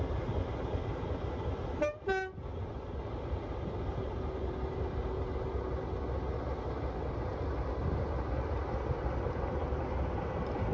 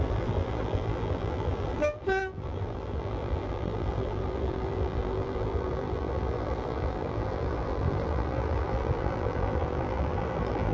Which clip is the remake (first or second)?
second